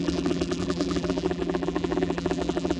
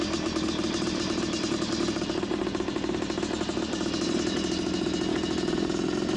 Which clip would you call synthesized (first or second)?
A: first